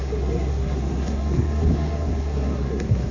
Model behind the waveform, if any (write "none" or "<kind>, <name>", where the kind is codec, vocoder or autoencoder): codec, SNAC